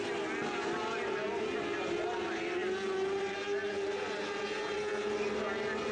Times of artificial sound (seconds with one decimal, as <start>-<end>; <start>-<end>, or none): none